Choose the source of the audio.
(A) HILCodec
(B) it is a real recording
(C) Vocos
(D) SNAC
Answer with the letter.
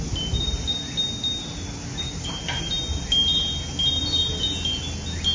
B